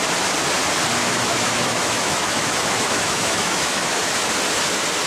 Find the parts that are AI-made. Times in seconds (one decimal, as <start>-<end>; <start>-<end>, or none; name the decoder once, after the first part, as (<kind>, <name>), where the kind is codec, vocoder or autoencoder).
1.0-4.1 (autoencoder, DAC-VAE)